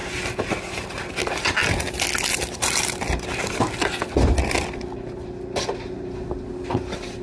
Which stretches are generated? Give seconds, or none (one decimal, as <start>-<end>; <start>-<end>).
none